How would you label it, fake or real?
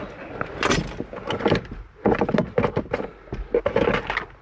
real